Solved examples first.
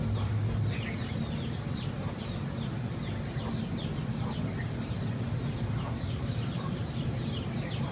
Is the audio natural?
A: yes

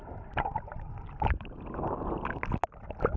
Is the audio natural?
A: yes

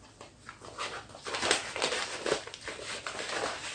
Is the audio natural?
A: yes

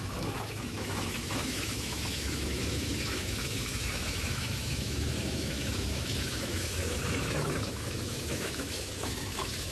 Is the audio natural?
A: no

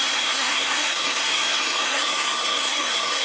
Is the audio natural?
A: no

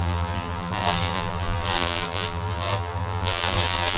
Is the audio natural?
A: no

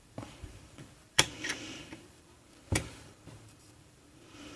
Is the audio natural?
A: no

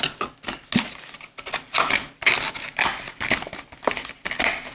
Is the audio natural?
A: yes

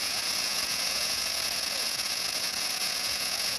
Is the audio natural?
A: no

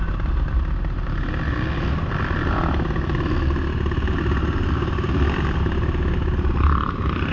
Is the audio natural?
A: yes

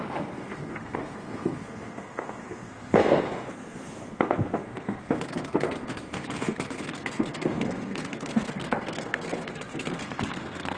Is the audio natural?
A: no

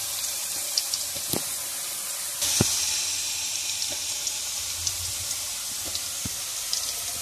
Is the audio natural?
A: no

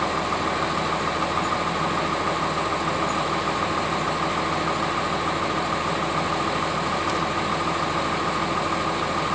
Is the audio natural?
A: yes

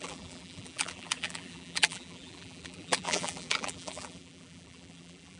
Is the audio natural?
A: no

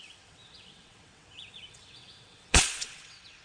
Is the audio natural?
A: no